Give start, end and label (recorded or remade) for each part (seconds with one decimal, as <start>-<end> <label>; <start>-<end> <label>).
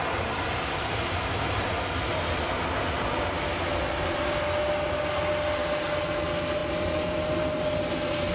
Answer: 0.0-8.3 recorded